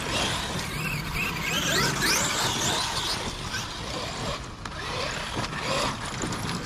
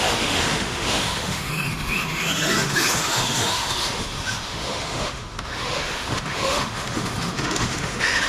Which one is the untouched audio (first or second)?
first